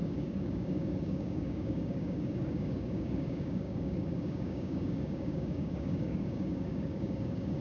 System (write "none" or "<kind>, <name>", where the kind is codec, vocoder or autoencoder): codec, DAC